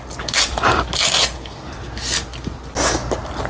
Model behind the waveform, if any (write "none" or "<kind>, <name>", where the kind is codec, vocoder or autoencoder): none